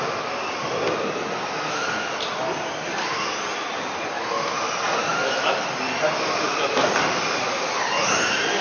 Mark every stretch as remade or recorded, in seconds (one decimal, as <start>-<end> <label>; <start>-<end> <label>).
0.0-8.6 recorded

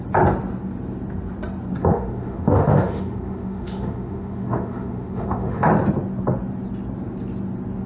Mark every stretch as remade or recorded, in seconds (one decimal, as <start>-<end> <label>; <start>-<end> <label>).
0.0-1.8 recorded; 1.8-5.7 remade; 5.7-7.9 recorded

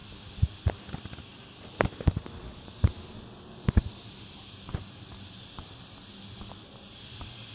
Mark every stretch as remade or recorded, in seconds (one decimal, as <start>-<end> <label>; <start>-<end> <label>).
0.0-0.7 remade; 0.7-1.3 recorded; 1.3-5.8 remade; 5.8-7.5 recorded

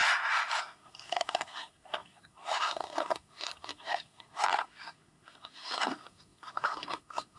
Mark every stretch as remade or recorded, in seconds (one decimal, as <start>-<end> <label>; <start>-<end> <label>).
0.0-0.6 recorded; 0.6-7.4 remade

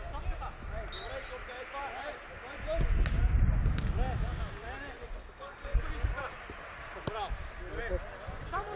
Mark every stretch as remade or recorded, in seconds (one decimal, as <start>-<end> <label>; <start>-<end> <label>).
0.0-5.2 recorded; 5.2-5.8 remade; 5.8-8.8 recorded